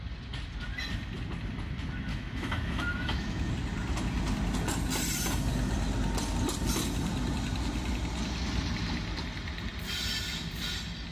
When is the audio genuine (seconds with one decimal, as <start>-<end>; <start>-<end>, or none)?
0.0-2.1; 3.5-11.1